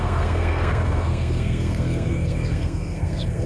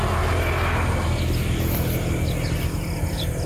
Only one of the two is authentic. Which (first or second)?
second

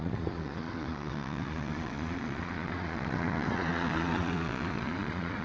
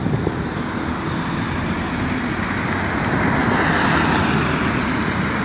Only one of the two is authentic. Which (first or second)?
second